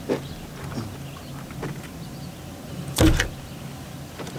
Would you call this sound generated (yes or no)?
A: no